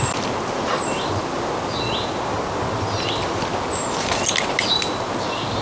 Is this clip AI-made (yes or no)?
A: no